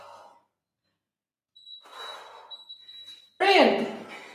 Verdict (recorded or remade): recorded